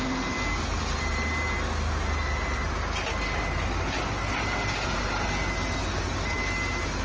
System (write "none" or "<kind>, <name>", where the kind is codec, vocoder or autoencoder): none